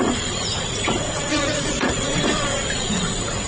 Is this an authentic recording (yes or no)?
no